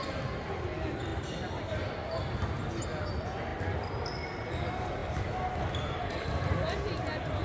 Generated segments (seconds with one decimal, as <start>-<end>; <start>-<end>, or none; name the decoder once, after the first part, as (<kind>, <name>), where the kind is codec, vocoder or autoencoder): none